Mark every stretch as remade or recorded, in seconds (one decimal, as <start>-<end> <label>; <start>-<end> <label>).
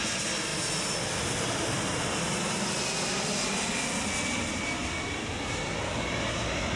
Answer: 0.0-6.8 recorded